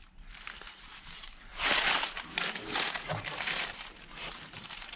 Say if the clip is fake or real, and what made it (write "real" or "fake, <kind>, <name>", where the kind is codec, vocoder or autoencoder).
fake, vocoder, BigVGAN v2